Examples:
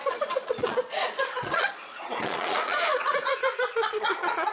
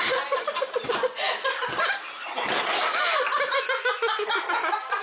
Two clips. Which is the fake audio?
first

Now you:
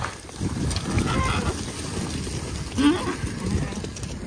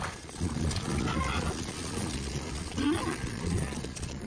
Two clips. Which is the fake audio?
second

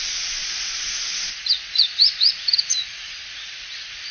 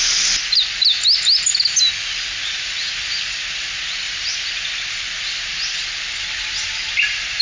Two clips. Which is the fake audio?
first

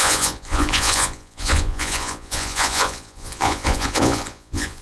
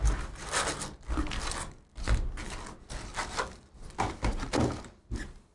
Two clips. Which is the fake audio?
first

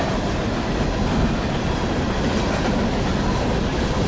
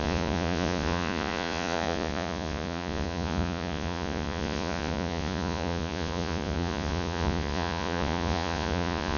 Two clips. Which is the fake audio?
second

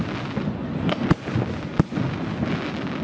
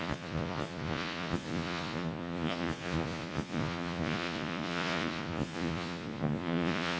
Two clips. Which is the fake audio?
second